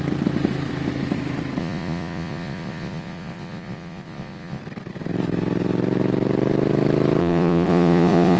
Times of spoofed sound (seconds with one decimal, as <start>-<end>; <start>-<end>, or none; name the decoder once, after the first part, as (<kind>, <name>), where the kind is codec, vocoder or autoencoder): 1.6-4.6 (vocoder, Vocos); 7.2-8.4